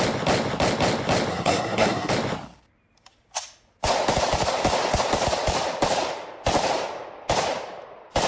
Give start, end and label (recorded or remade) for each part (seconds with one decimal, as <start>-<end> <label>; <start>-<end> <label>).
0.0-1.3 recorded; 1.3-2.1 remade; 2.1-8.3 recorded